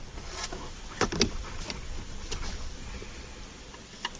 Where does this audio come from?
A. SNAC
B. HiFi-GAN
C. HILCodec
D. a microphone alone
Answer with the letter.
D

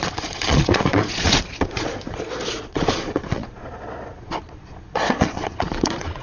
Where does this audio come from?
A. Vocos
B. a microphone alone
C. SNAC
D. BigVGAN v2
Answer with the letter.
A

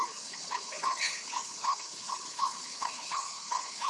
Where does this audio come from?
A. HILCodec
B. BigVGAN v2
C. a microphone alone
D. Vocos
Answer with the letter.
A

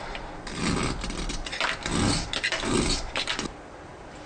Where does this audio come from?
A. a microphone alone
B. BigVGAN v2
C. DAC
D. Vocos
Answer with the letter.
A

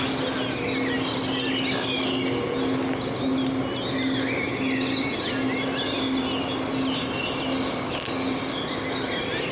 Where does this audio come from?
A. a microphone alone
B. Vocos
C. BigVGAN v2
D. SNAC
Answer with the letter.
A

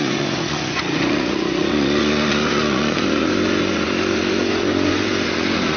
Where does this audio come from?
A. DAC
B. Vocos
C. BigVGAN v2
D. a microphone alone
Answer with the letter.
B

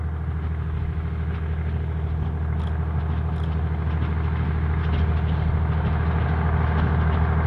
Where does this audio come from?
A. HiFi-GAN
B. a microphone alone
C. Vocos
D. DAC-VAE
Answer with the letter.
B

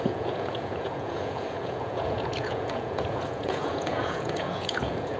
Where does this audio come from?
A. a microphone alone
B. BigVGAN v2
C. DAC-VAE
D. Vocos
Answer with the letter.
D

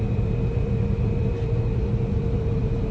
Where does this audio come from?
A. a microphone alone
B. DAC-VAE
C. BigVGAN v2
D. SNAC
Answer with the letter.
A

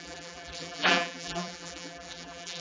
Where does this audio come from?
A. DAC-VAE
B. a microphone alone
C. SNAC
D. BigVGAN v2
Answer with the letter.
D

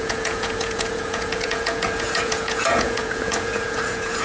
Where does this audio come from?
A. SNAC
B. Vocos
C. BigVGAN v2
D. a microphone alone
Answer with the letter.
B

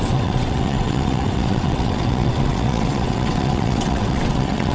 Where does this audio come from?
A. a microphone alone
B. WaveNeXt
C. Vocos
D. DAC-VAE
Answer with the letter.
B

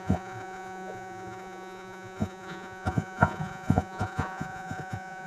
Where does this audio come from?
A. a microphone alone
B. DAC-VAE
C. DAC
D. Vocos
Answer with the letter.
D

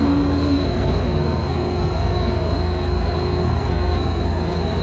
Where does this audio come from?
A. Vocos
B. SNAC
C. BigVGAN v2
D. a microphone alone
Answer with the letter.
B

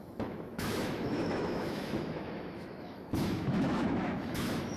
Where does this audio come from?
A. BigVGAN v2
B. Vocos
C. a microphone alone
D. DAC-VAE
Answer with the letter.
D